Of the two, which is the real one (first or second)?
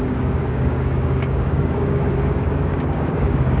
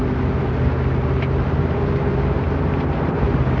second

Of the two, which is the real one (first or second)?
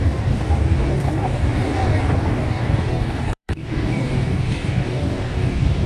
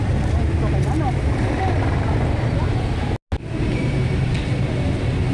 second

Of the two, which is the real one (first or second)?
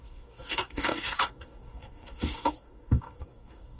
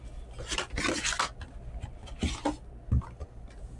second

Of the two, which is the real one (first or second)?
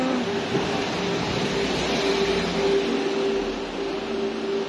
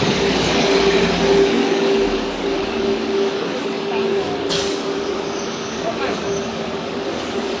first